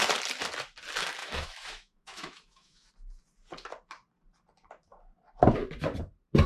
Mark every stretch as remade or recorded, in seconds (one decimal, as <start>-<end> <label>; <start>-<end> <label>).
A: 0.0-1.2 recorded; 1.2-2.9 remade; 2.9-6.5 recorded